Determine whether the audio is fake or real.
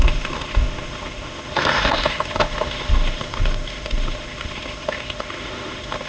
fake